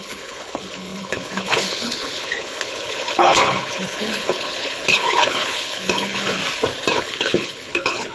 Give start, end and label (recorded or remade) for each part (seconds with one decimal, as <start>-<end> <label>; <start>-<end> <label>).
0.0-6.4 remade; 6.4-6.9 recorded; 6.9-8.1 remade